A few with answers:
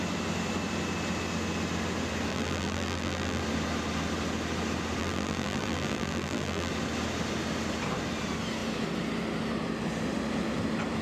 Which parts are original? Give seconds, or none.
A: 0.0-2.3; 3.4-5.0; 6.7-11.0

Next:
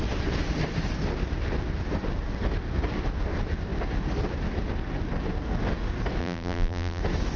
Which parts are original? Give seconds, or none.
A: 0.0-6.2; 7.0-7.4

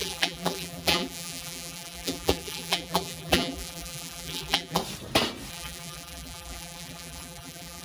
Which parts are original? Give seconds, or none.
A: 4.8-5.5

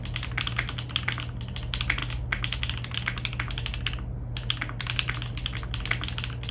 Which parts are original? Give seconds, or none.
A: 0.0-6.5

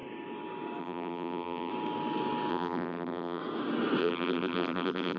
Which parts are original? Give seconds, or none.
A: 0.0-0.8; 1.7-2.5; 3.4-4.0